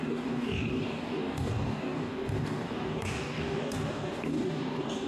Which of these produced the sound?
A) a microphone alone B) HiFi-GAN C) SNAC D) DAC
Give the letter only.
D